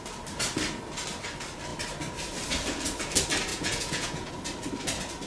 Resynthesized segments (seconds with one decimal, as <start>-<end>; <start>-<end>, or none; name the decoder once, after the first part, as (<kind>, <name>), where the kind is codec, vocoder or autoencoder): 3.5-4.3 (vocoder, Vocos)